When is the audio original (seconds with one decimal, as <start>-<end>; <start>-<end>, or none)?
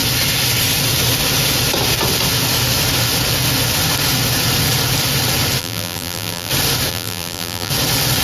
0.0-5.6; 6.5-6.9; 7.7-8.2